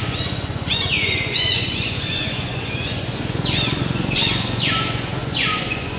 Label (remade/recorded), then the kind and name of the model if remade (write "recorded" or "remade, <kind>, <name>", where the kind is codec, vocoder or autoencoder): remade, vocoder, Vocos